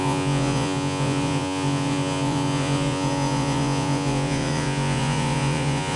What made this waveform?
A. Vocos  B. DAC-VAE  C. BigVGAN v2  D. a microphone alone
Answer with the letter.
A